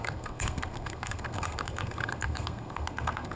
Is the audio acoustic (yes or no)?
no